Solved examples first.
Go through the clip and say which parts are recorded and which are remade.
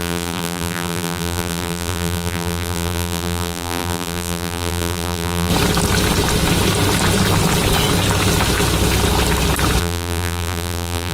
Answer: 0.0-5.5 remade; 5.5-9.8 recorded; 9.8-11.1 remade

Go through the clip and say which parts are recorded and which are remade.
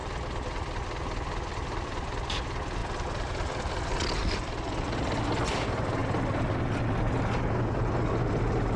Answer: 0.0-2.4 remade; 2.4-2.8 recorded; 2.8-3.7 remade; 3.7-4.2 recorded; 4.2-5.0 remade; 5.0-8.8 recorded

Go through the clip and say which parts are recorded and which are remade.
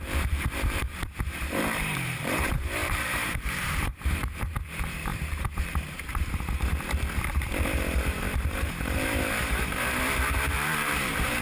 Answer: 0.0-11.4 remade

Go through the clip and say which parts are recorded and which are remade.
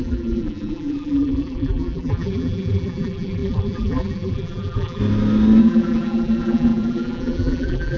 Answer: 0.0-5.0 remade; 5.0-5.6 recorded; 5.6-8.0 remade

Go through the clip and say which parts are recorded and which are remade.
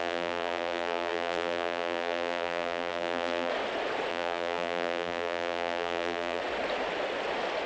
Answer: 0.0-3.5 remade; 3.5-4.1 recorded; 4.1-6.4 remade; 6.4-7.7 recorded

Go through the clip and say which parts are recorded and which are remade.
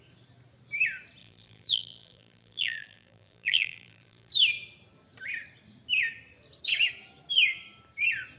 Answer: 0.0-1.2 recorded; 1.2-4.3 remade; 4.3-8.4 recorded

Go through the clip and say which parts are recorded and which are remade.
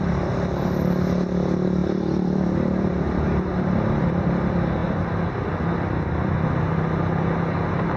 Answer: 0.0-1.8 recorded; 1.8-4.3 remade; 4.3-8.0 recorded